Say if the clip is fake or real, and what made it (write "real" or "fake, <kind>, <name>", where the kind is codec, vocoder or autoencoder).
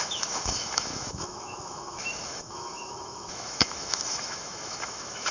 fake, autoencoder, DAC-VAE